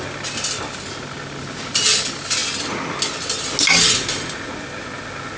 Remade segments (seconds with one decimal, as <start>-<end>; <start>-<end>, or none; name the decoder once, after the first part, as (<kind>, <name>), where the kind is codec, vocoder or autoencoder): none

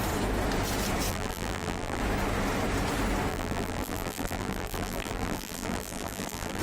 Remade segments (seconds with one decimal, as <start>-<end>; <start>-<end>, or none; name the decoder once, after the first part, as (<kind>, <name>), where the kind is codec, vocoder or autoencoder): 1.1-2.0 (vocoder, BigVGAN v2); 3.3-6.6

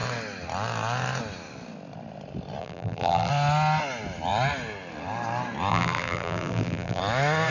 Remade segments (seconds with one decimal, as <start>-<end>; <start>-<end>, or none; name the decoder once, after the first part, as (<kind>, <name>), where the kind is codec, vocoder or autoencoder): 2.6-3.3 (vocoder, BigVGAN v2); 5.7-7.0

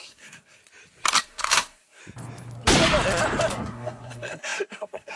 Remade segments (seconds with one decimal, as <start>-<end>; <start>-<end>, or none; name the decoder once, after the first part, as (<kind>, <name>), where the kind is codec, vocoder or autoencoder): 0.0-0.6 (codec, SNAC); 1.2-2.0; 3.5-5.2